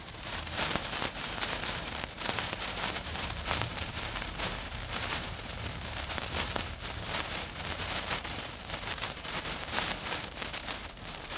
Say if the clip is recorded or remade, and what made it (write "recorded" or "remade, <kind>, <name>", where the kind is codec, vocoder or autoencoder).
remade, vocoder, BigVGAN v2